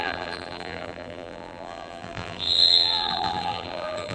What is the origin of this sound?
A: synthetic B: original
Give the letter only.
A